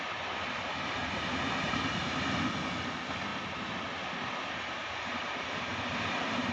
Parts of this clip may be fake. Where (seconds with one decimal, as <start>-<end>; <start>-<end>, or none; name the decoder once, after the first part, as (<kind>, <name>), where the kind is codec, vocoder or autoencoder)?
1.0-2.2 (vocoder, BigVGAN v2); 3.3-5.7